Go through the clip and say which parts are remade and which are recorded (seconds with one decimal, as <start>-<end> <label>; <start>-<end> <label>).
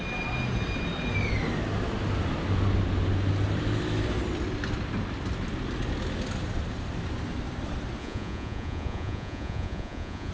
0.0-8.0 recorded; 8.0-10.3 remade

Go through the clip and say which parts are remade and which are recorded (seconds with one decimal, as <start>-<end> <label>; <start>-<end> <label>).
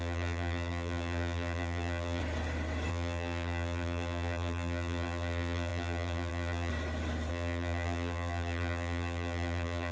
0.0-2.2 remade; 2.2-2.9 recorded; 2.9-6.7 remade; 6.7-7.3 recorded; 7.3-9.9 remade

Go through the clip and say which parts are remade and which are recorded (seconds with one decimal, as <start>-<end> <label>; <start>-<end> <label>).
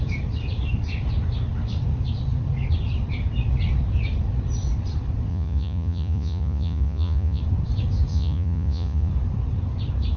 0.0-5.3 recorded; 5.3-7.4 remade; 7.4-8.1 recorded; 8.1-9.1 remade; 9.1-10.2 recorded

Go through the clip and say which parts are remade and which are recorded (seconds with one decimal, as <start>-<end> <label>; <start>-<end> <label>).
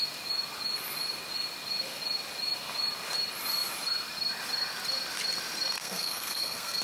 0.0-5.8 recorded; 5.8-6.8 remade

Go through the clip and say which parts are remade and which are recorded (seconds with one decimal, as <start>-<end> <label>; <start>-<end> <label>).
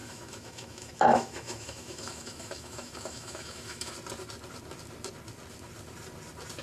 0.0-3.9 remade; 3.9-6.6 recorded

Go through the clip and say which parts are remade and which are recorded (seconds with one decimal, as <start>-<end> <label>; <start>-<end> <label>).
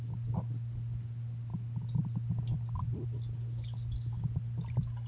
0.0-5.1 recorded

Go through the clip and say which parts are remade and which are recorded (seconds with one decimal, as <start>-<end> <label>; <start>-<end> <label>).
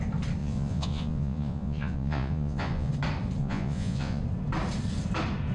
0.0-0.4 recorded; 0.4-2.9 remade; 2.9-3.4 recorded; 3.4-4.2 remade; 4.2-5.5 recorded